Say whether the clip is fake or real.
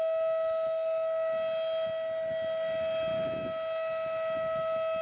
real